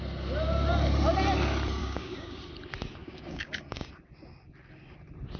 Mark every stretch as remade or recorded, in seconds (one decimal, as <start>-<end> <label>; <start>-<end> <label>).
0.0-1.8 recorded; 1.8-2.4 remade; 2.4-3.0 recorded; 3.0-3.9 remade; 3.9-5.4 recorded